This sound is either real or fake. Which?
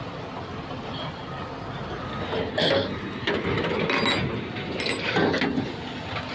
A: real